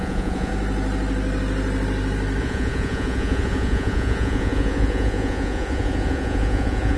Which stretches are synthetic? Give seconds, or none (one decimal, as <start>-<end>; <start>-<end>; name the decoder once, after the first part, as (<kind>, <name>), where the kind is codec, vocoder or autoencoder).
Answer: 0.0-0.5 (vocoder, Vocos); 2.4-7.0